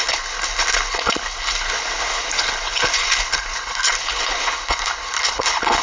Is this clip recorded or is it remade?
remade